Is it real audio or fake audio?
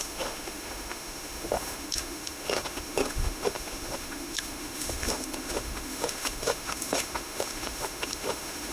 fake